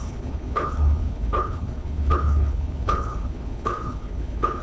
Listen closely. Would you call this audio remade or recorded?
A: remade